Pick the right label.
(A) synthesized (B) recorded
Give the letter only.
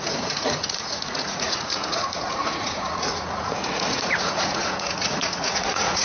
A